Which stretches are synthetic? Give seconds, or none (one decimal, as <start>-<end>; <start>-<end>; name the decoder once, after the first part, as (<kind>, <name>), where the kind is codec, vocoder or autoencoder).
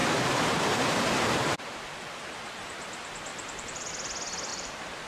0.0-1.8 (vocoder, BigVGAN v2); 3.3-3.9; 4.5-5.1